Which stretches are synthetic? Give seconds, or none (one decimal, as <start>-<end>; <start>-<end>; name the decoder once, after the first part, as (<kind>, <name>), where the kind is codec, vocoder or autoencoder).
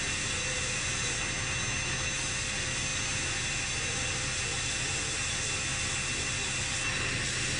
none